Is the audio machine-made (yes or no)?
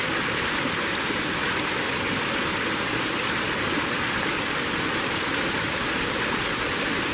no